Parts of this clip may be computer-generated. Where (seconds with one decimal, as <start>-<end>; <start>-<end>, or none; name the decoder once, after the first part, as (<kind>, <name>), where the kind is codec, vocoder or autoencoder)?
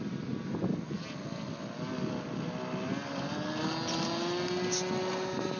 none